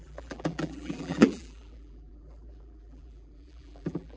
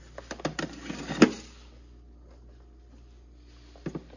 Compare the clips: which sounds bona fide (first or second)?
second